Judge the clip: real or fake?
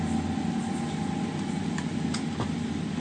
real